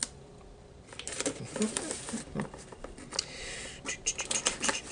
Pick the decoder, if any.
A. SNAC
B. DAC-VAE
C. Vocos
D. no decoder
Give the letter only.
D